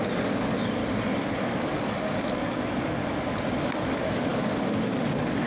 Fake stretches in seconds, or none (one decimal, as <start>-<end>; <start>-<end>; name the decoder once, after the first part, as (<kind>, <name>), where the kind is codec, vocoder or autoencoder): 0.0-0.8 (codec, DAC); 1.3-3.0; 3.6-5.5